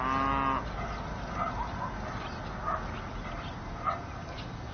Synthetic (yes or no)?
no